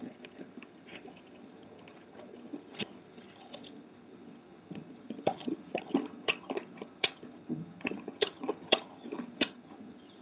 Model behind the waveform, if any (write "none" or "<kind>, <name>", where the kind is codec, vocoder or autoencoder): vocoder, HiFi-GAN